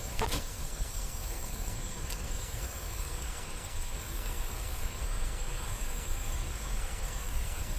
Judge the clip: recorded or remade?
remade